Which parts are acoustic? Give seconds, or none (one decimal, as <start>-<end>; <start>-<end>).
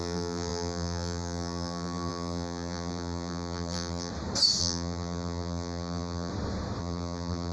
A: 4.1-4.6; 6.3-6.8